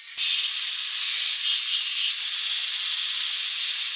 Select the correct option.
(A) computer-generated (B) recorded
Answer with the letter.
B